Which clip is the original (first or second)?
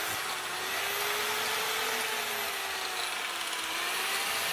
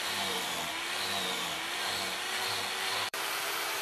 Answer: first